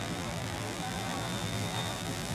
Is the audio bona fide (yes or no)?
no